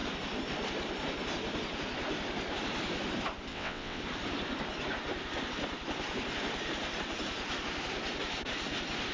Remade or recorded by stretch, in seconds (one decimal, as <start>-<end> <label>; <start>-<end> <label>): 0.0-3.5 recorded; 3.5-4.0 remade; 4.0-9.1 recorded